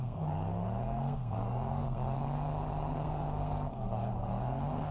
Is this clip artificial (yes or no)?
yes